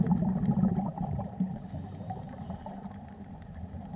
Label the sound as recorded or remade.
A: remade